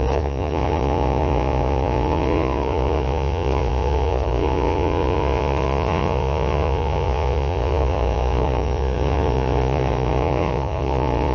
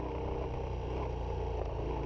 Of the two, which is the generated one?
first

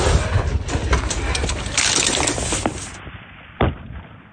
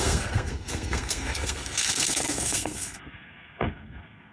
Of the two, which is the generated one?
second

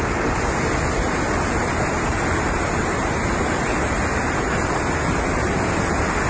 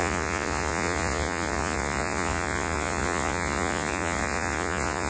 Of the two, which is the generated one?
second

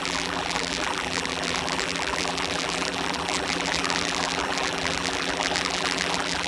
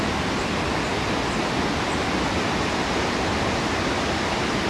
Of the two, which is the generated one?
first